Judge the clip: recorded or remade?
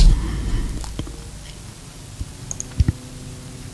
recorded